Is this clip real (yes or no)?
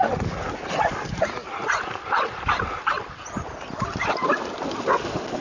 yes